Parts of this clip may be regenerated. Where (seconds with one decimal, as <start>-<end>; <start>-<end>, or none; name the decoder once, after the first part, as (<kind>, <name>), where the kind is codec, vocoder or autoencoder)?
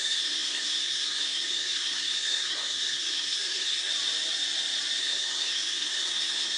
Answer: 0.0-3.9 (codec, SNAC); 5.0-6.6